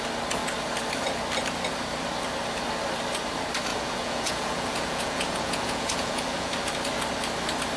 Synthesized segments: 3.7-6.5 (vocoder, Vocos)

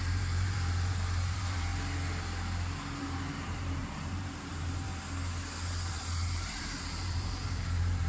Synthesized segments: 0.0-1.7 (vocoder, BigVGAN v2); 3.0-4.9; 5.9-8.1